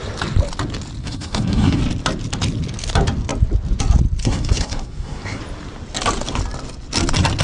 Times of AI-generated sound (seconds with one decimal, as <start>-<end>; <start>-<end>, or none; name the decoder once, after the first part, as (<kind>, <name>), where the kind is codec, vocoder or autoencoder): 1.0-1.8 (codec, SNAC); 4.2-5.4